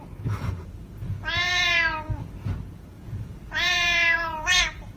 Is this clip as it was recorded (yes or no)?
no